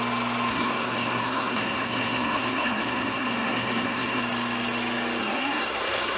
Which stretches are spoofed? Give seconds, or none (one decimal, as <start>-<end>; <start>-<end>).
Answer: 0.5-4.2; 5.2-6.2